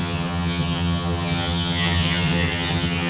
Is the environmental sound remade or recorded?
remade